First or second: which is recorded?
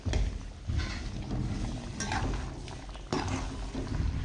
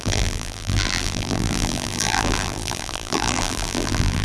first